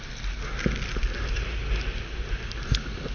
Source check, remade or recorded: recorded